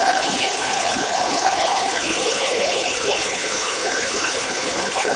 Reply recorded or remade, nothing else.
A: remade